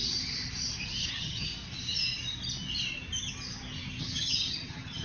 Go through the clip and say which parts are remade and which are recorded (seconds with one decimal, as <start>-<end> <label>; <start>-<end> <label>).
0.0-1.1 recorded; 1.1-1.5 remade; 1.5-4.0 recorded; 4.0-5.0 remade